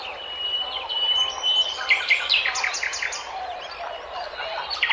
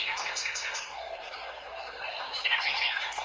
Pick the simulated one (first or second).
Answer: second